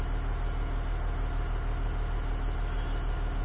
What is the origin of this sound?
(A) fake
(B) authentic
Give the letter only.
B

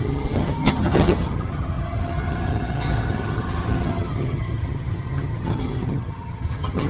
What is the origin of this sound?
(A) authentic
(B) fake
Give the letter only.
B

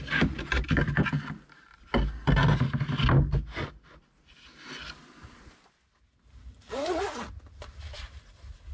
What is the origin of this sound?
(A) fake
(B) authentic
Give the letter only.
B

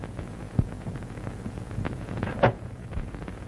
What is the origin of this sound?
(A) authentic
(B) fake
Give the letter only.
B